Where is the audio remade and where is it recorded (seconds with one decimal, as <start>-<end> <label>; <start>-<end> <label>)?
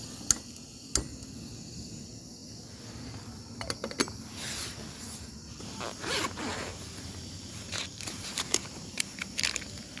0.0-5.4 recorded; 5.4-9.4 remade; 9.4-10.0 recorded